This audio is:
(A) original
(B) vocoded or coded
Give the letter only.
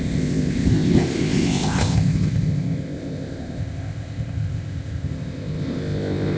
B